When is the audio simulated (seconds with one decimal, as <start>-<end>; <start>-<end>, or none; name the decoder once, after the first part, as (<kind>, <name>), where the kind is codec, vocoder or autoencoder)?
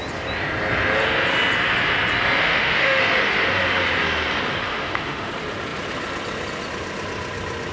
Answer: 2.4-3.0 (autoencoder, DAC-VAE); 4.7-5.3